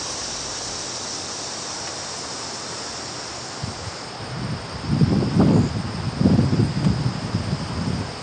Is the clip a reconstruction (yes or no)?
no